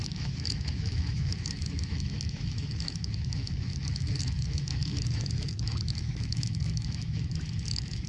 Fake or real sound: fake